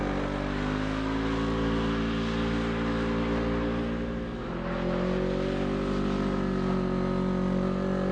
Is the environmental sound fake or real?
real